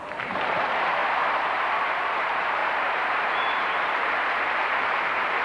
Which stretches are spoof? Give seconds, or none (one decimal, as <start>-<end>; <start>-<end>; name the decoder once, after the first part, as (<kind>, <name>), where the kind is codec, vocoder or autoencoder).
0.0-1.0 (vocoder, BigVGAN v2); 1.7-2.6; 3.3-5.4